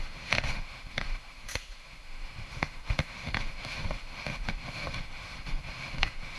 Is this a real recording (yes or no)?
no